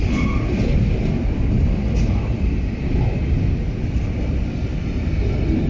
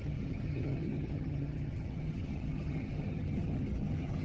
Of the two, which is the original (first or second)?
first